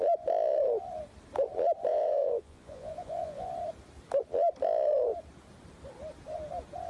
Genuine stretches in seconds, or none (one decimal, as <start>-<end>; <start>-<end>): 0.0-1.9; 3.5-6.9